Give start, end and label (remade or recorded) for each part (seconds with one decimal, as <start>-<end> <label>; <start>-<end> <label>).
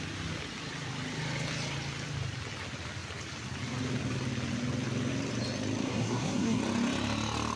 0.0-5.8 recorded; 5.8-6.6 remade; 6.6-7.6 recorded